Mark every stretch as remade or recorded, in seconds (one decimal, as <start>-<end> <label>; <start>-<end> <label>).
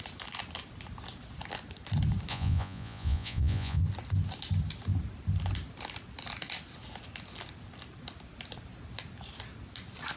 0.0-2.3 recorded; 2.3-3.8 remade; 3.8-10.2 recorded